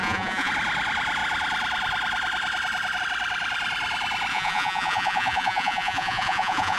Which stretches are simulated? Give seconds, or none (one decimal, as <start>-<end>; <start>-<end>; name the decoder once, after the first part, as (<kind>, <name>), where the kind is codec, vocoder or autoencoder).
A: 0.0-0.5 (vocoder, Vocos); 4.3-6.8